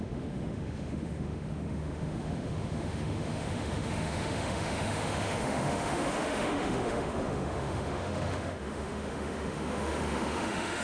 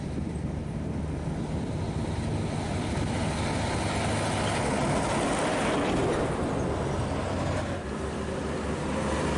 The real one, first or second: second